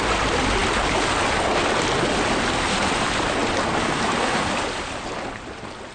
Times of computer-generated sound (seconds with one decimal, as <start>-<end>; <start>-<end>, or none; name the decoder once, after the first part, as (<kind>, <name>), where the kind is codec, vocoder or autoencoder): none